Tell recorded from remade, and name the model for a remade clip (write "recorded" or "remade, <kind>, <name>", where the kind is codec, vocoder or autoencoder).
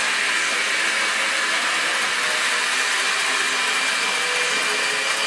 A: recorded